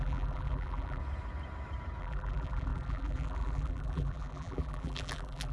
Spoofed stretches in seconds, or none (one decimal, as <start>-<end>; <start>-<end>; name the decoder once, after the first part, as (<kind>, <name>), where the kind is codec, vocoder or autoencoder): 0.0-1.0 (vocoder, BigVGAN v2); 2.0-5.5